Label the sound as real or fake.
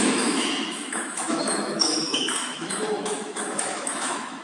fake